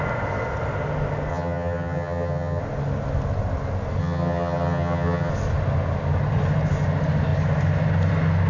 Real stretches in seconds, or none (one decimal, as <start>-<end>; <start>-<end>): 0.0-1.3; 2.6-4.0; 5.3-8.5